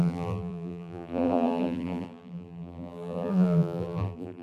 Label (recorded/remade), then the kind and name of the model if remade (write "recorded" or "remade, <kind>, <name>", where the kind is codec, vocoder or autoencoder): remade, vocoder, BigVGAN v2